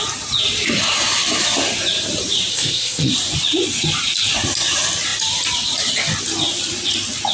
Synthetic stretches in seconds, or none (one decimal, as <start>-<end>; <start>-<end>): 2.5-3.1